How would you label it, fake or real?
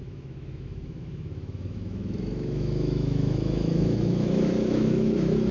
fake